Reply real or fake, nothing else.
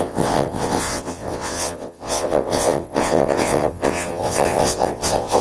fake